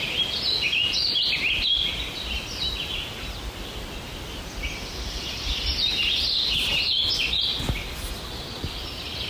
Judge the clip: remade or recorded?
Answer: recorded